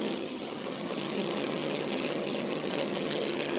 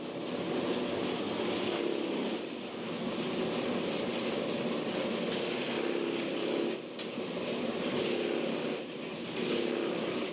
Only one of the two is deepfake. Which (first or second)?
first